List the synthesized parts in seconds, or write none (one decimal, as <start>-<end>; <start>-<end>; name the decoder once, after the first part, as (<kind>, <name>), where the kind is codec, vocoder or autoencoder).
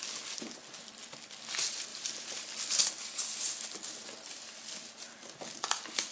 1.9-2.5 (vocoder, BigVGAN v2)